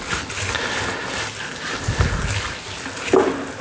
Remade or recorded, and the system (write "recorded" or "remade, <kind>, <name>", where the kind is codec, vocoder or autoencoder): recorded